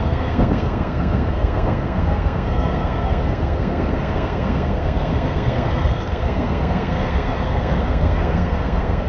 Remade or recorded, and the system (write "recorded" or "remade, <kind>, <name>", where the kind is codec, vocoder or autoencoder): remade, codec, SNAC